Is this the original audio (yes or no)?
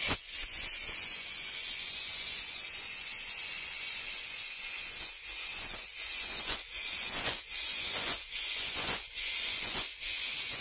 no